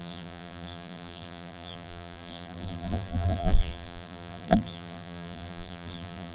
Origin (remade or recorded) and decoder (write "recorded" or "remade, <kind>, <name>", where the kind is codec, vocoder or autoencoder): remade, vocoder, BigVGAN v2